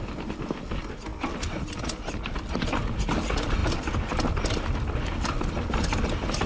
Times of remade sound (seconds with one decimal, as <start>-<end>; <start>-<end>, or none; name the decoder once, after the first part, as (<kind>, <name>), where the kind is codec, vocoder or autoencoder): none